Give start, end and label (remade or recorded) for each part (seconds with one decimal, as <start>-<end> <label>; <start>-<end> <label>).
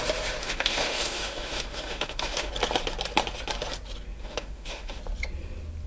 0.0-0.4 recorded; 0.4-2.5 remade; 2.5-4.2 recorded; 4.2-5.0 remade; 5.0-5.9 recorded